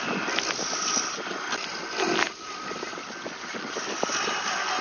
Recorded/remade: recorded